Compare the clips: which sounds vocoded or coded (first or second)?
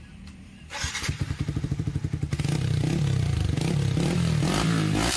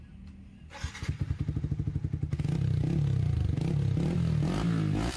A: first